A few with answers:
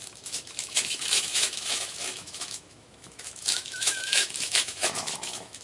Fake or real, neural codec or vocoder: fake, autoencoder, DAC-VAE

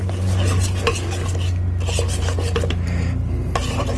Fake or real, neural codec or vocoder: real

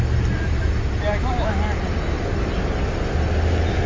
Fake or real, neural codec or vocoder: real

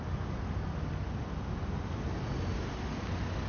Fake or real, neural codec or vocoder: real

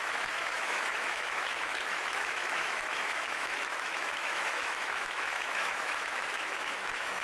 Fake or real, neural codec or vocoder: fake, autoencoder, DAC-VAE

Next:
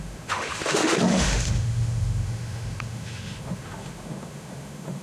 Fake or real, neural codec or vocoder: fake, autoencoder, DAC-VAE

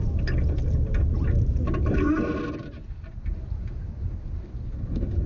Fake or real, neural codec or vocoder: real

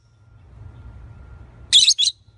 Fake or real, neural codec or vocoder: real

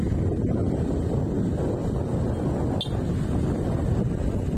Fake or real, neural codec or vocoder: real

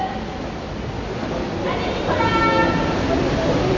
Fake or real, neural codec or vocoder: real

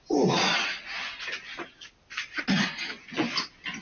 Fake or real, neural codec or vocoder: real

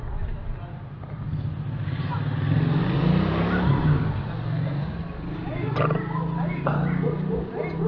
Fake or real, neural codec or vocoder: real